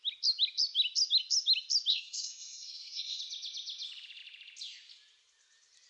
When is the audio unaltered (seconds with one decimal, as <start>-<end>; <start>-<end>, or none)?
0.0-1.9; 3.2-5.9